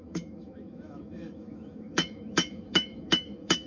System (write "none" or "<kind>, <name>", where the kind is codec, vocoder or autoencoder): autoencoder, DAC-VAE